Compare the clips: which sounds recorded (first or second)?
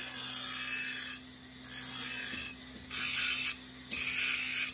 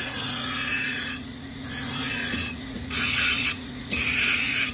first